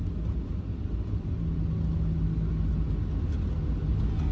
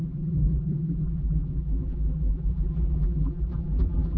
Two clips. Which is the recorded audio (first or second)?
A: first